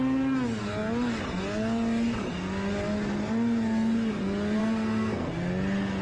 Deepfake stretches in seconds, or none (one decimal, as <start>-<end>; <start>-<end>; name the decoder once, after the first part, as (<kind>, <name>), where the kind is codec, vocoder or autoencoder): 4.6-5.3 (codec, SNAC)